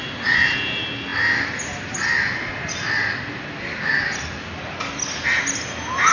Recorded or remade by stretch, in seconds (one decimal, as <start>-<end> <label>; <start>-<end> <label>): 0.0-6.1 recorded